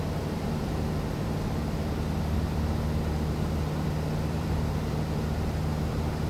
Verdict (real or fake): fake